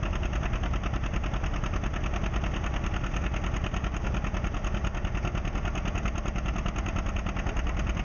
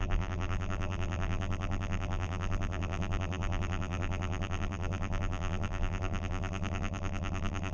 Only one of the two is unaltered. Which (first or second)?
first